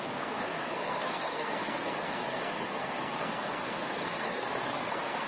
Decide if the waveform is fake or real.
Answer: fake